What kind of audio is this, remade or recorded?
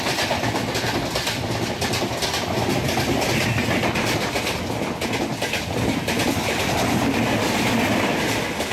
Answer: recorded